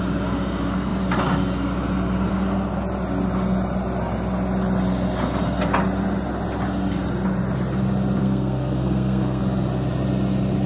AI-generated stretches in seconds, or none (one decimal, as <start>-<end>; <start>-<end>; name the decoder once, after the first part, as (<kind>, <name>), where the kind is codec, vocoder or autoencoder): 8.2-9.4 (codec, SNAC)